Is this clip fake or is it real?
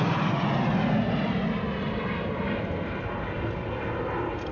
real